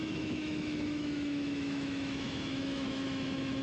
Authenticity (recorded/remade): remade